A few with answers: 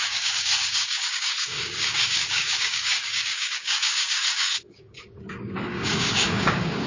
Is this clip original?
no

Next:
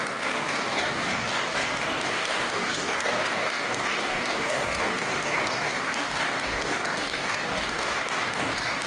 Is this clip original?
no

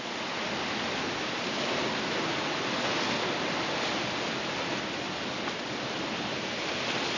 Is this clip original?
yes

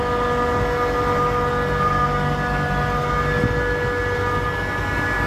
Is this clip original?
yes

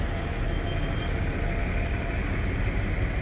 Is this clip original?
yes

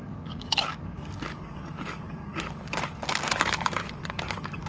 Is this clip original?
no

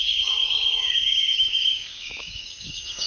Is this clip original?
no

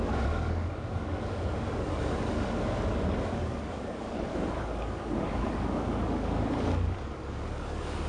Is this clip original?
no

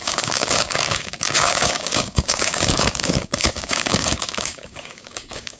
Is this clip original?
no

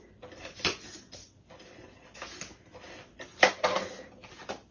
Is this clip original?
yes